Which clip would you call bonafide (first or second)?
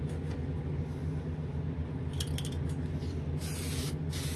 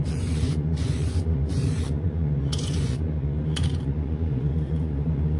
first